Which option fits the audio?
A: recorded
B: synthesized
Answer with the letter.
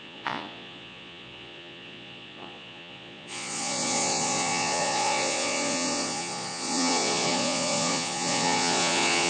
B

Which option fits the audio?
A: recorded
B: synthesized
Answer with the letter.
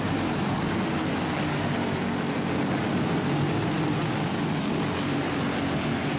A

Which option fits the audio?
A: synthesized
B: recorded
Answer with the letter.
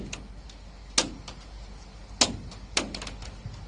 B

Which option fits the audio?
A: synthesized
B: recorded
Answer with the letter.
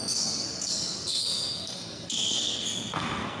A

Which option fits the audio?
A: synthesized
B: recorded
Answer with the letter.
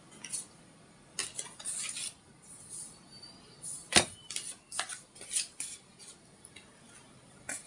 B